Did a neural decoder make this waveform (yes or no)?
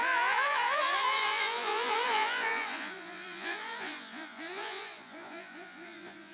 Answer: yes